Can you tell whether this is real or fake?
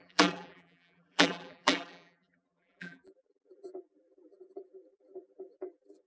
fake